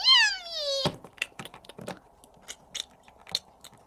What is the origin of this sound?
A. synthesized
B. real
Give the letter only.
B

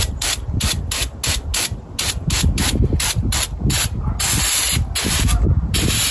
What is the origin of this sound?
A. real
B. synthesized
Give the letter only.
A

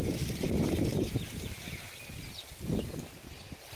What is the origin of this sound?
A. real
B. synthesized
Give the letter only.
A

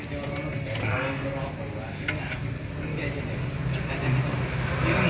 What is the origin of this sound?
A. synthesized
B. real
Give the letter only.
B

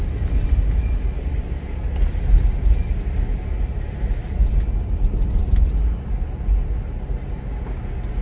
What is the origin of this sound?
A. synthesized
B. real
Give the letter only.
B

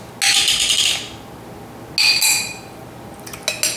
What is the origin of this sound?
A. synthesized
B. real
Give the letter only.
B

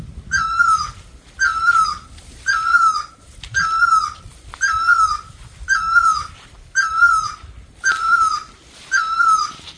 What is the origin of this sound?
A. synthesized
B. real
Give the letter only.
B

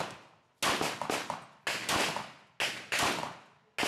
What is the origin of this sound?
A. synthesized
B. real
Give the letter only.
B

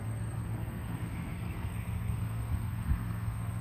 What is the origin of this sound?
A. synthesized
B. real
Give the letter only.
A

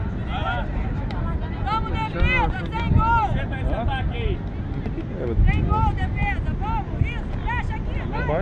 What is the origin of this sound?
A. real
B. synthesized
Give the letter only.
A